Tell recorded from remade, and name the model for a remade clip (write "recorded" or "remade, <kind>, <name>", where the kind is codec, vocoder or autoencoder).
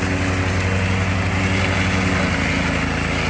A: recorded